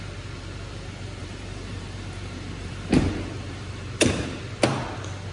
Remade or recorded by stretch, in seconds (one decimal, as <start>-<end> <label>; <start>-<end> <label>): 0.0-1.2 recorded; 1.2-4.4 remade; 4.4-5.3 recorded

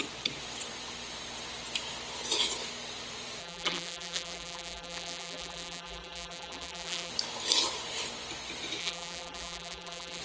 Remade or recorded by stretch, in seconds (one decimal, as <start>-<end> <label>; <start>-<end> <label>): 0.0-3.4 recorded; 3.4-7.1 remade; 7.1-8.8 recorded; 8.8-10.2 remade

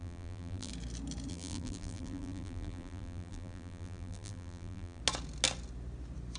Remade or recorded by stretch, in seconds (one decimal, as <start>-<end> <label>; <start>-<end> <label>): 0.0-0.7 remade; 0.7-1.3 recorded; 1.3-5.0 remade; 5.0-6.4 recorded

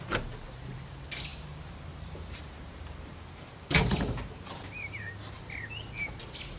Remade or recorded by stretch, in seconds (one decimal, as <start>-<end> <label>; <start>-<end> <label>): 0.0-1.3 recorded; 1.3-5.1 remade; 5.1-6.6 recorded

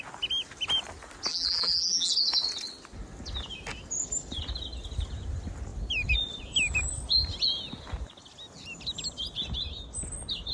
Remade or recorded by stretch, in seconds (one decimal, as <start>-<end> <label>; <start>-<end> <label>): 0.0-1.3 recorded; 1.3-2.1 remade; 2.1-10.5 recorded

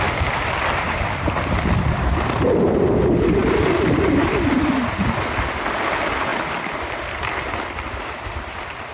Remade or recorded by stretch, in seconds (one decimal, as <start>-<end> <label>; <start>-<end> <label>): 0.0-3.4 recorded; 3.4-4.4 remade; 4.4-8.9 recorded

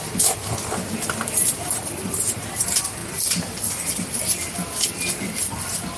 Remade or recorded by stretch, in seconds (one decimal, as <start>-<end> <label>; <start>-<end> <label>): 0.0-6.0 remade